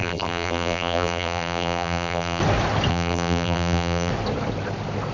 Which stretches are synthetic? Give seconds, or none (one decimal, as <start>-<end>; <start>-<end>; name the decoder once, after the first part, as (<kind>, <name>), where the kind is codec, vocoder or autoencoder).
0.0-2.4 (vocoder, BigVGAN v2); 2.9-4.1